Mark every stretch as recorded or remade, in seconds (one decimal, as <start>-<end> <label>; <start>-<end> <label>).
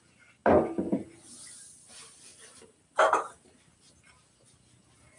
0.0-2.3 recorded; 2.3-3.7 remade; 3.7-5.2 recorded